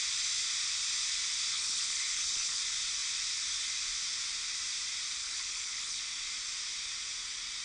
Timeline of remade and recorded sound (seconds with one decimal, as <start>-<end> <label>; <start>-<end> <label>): 0.0-1.5 recorded; 1.5-2.6 remade; 2.6-5.2 recorded; 5.2-6.0 remade; 6.0-7.6 recorded